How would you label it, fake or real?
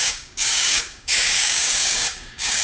fake